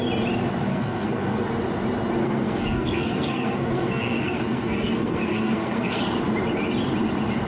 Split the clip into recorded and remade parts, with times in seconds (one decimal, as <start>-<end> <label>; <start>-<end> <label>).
0.0-0.7 recorded; 0.7-1.4 remade; 1.4-2.2 recorded; 2.2-6.0 remade; 6.0-7.5 recorded